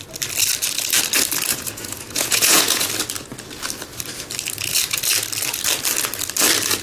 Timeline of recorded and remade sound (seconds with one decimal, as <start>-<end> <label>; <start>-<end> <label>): 0.0-1.5 recorded; 1.5-2.9 remade; 2.9-6.8 recorded